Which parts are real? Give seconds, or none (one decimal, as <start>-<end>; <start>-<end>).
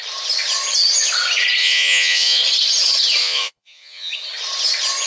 0.0-1.6; 2.4-3.2; 4.1-5.1